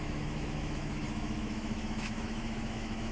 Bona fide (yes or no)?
no